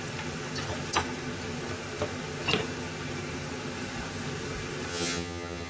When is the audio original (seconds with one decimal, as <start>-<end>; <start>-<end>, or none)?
0.0-4.9

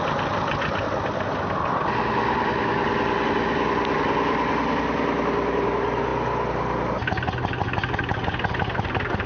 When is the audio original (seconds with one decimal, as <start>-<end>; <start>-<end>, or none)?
0.0-9.3

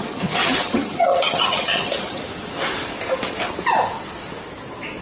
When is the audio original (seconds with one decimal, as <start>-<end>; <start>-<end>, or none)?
2.2-5.0

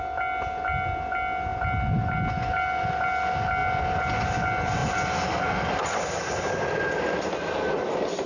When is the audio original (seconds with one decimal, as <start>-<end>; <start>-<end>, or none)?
0.0-8.3

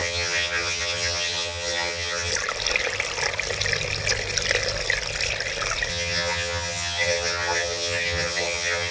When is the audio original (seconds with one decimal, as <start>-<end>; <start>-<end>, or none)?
2.3-5.9

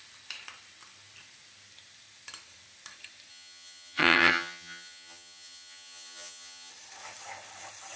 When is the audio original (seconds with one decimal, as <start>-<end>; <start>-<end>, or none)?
0.0-3.3; 6.7-8.0

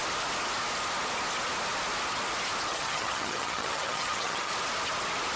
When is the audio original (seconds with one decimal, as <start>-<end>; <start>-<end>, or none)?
0.0-2.7; 4.5-5.4